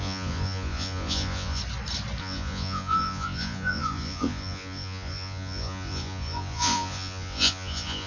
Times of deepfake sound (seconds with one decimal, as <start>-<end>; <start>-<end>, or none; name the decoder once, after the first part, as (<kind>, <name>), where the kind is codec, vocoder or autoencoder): 0.0-1.6 (vocoder, Vocos); 2.2-8.1